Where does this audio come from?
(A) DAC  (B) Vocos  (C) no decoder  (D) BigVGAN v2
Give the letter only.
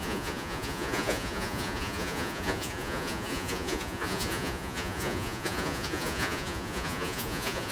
B